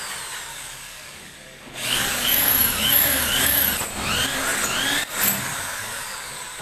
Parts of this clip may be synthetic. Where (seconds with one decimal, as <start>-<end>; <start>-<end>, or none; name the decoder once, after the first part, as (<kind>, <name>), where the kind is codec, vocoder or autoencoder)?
0.5-3.6 (codec, DAC); 5.5-6.6